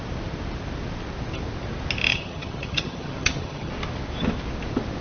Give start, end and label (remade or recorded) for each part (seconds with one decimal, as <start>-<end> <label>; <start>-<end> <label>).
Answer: 0.0-2.1 recorded; 2.1-3.7 remade; 3.7-5.0 recorded